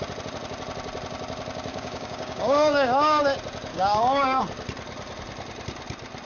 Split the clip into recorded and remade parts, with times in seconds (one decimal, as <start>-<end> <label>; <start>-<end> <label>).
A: 0.0-1.7 recorded; 1.7-3.2 remade; 3.2-3.7 recorded; 3.7-4.4 remade; 4.4-6.2 recorded